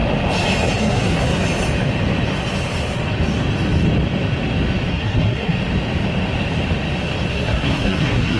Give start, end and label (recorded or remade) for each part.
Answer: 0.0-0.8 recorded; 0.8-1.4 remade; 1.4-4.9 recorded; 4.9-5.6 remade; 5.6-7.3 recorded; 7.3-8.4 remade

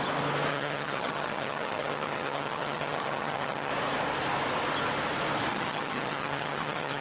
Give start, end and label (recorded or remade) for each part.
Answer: 0.0-0.5 recorded; 0.5-3.7 remade; 3.7-5.5 recorded; 5.5-7.0 remade

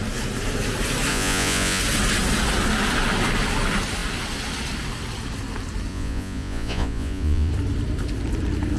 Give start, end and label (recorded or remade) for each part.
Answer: 0.0-1.1 recorded; 1.1-1.8 remade; 1.8-5.9 recorded; 5.9-7.5 remade; 7.5-8.8 recorded

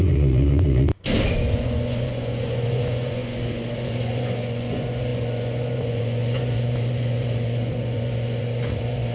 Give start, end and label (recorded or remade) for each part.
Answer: 0.0-0.9 remade; 0.9-1.5 recorded; 1.5-9.1 remade

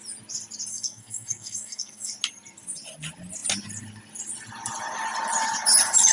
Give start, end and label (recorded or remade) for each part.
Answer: 0.0-0.7 recorded; 0.7-2.1 remade; 2.1-6.1 recorded

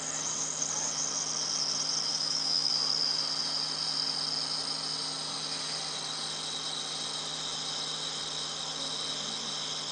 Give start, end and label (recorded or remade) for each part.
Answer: 0.0-2.1 recorded; 2.1-2.7 remade; 2.7-9.9 recorded

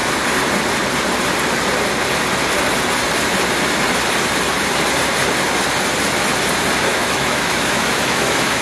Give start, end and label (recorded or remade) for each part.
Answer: 0.0-6.9 recorded; 6.9-8.6 remade

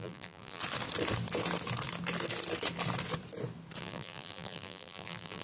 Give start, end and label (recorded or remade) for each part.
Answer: 0.0-0.6 remade; 0.6-3.8 recorded; 3.8-5.4 remade